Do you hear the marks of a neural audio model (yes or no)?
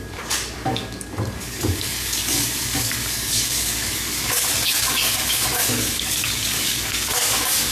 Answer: yes